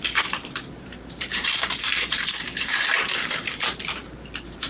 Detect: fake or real fake